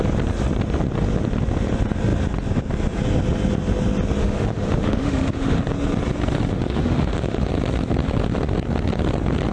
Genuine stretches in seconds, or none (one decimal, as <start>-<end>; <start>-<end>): 0.0-4.2; 5.6-6.5; 7.5-9.5